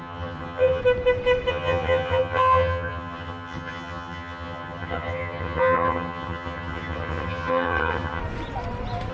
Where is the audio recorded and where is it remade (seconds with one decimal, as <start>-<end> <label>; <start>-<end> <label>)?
0.0-0.8 remade; 0.8-1.5 recorded; 1.5-8.2 remade; 8.2-9.1 recorded